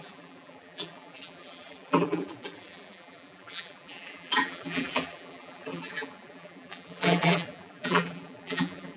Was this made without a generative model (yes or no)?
no